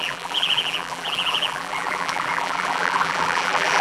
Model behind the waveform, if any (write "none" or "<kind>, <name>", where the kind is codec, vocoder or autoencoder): vocoder, BigVGAN v2